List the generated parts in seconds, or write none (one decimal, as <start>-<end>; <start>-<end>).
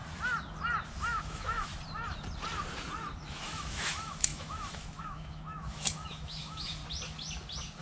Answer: 0.9-1.7; 3.3-6.8